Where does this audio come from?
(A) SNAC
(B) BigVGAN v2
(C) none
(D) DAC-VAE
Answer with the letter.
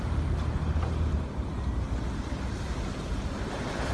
C